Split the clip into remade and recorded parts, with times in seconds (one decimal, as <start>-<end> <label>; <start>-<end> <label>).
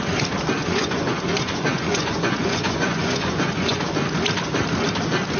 0.0-0.6 recorded; 0.6-3.8 remade; 3.8-5.4 recorded